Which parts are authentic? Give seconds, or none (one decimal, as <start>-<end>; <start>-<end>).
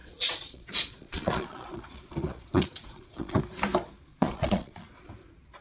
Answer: 3.4-4.1; 5.1-5.6